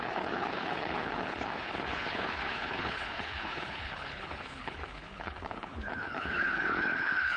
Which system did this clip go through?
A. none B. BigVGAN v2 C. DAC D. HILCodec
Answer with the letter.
D